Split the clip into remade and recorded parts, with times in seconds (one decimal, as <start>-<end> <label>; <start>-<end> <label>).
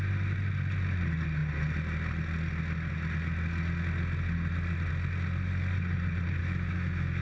0.0-6.4 recorded; 6.4-7.2 remade